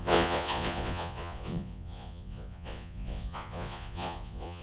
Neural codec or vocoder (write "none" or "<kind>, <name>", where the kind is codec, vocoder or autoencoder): vocoder, Vocos